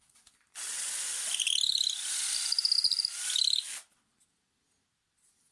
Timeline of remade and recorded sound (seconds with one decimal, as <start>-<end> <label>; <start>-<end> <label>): 0.0-5.5 recorded